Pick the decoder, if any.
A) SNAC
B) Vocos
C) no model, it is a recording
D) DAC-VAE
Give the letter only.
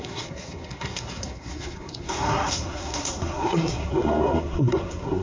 A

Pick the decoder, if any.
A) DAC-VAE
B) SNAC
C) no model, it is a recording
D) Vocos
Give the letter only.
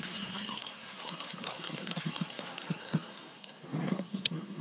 B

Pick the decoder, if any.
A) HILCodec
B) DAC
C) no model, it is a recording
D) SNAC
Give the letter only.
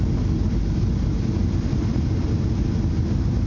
C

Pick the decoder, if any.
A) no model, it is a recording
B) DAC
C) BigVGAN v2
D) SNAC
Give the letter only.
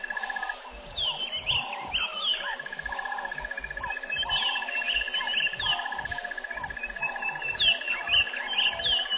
A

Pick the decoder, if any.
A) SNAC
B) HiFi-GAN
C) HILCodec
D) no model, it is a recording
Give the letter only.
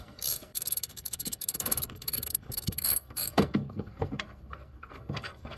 A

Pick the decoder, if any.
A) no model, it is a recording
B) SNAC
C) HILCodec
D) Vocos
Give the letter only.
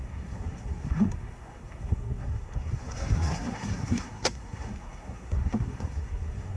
B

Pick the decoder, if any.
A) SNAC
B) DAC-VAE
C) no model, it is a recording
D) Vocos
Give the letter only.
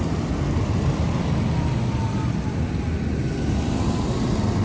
C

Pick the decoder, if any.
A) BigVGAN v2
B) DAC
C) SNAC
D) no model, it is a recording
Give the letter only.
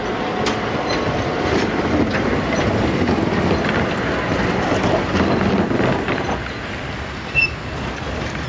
D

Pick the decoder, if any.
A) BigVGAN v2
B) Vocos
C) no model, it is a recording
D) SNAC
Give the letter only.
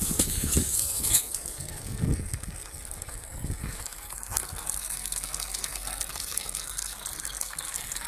D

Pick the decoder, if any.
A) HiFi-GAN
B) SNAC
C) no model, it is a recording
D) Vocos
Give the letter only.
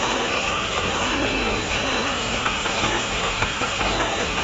B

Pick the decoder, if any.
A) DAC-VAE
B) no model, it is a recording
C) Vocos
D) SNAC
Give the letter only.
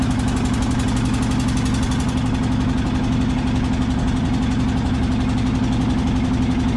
B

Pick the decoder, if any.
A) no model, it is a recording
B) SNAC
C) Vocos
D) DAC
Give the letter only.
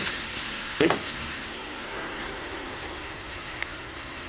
B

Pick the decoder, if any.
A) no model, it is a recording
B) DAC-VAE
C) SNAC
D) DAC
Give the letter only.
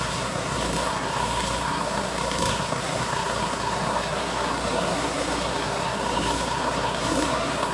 C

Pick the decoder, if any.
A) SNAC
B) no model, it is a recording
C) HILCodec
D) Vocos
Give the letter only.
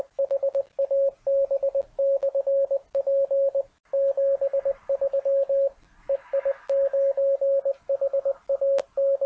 B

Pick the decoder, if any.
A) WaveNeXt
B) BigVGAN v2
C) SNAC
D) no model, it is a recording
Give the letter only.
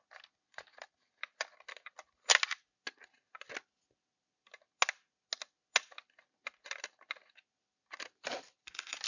D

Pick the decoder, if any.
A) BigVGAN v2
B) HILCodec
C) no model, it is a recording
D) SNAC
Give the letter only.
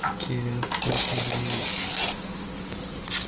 C